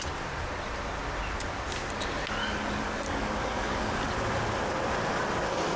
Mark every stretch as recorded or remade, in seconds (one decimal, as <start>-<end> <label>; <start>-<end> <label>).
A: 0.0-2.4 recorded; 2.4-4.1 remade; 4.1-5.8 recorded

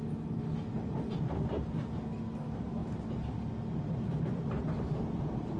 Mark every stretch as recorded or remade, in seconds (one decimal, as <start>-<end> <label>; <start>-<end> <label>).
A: 0.0-5.6 recorded

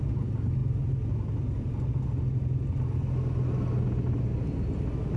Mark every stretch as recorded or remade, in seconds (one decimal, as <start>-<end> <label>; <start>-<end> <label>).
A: 0.0-5.2 recorded